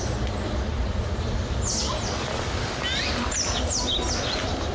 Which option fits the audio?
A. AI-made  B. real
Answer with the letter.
B